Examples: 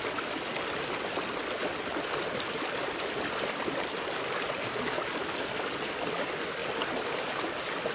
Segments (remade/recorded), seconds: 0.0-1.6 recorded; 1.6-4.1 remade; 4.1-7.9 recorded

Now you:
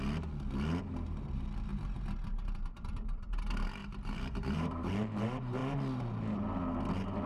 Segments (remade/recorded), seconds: 0.0-1.7 recorded; 1.7-3.4 remade; 3.4-3.8 recorded; 3.8-4.9 remade; 4.9-7.3 recorded

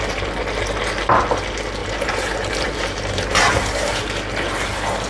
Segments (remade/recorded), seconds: 0.0-1.8 recorded; 1.8-4.0 remade; 4.0-5.1 recorded

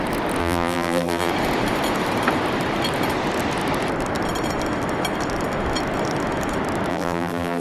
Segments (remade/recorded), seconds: 0.0-0.4 recorded; 0.4-1.3 remade; 1.3-6.9 recorded; 6.9-7.6 remade

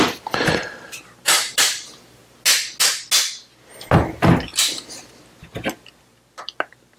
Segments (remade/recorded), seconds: 0.0-2.2 remade; 2.2-6.3 recorded; 6.3-7.0 remade

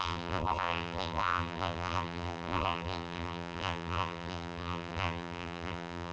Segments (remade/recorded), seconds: 0.0-6.1 remade